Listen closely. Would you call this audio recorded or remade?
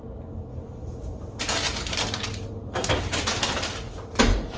recorded